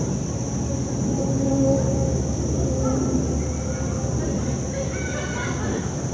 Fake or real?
real